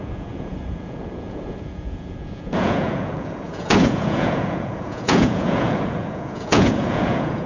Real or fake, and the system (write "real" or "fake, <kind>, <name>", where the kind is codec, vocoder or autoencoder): fake, vocoder, Vocos